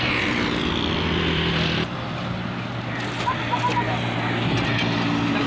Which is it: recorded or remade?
recorded